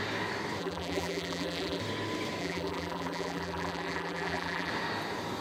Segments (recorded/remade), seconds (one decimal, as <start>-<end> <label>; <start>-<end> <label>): 0.0-0.6 recorded; 0.6-1.8 remade; 1.8-2.4 recorded; 2.4-4.7 remade; 4.7-5.4 recorded